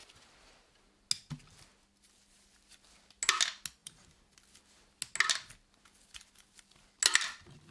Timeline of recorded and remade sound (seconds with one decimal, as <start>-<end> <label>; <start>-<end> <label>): 0.0-3.8 recorded; 3.8-4.4 remade; 4.4-7.7 recorded